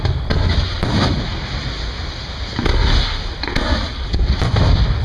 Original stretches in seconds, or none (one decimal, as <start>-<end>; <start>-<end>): 0.0-5.0